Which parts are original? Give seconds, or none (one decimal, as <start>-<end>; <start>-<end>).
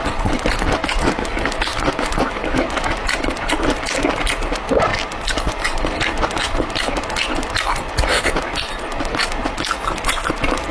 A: 0.0-10.7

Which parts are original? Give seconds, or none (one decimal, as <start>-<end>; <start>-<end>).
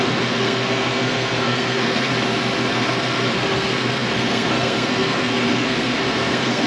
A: 2.1-2.7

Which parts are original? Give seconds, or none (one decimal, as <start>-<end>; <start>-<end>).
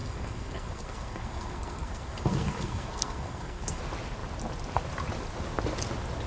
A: 3.8-6.3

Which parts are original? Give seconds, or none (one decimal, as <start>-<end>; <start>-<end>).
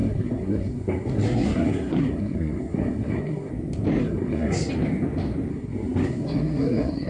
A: 3.5-4.0; 4.7-5.5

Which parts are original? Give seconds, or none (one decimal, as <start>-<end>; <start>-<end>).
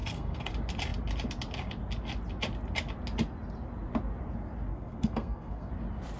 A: 0.5-4.7; 5.7-6.2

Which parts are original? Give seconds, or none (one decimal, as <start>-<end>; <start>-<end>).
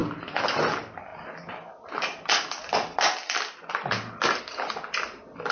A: 0.0-5.5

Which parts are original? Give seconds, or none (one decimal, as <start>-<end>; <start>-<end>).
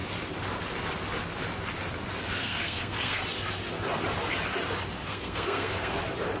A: 0.0-2.4; 3.2-5.0; 6.0-6.4